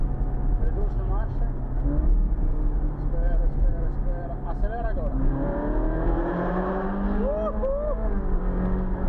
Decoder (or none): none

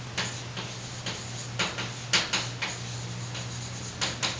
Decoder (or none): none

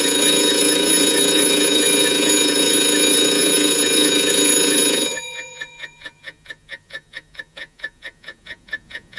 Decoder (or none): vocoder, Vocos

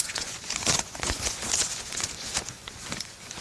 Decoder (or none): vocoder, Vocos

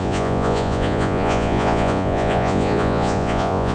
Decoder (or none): vocoder, Vocos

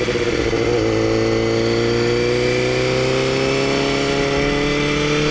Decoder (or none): none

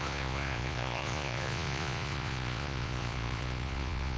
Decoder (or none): vocoder, Vocos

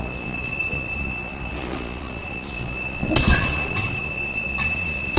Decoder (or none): vocoder, Vocos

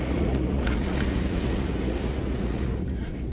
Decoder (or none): vocoder, Vocos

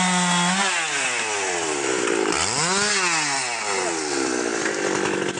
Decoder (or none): none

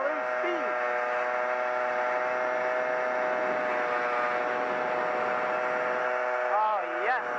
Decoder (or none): none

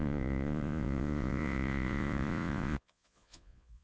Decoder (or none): vocoder, Vocos